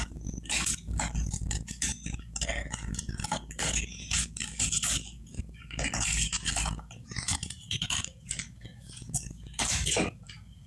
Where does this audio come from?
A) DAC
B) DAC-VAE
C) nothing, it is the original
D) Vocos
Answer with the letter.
A